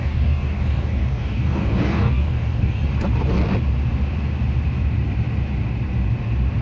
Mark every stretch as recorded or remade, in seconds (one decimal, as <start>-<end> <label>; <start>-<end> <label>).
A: 0.0-2.8 remade; 2.8-6.6 recorded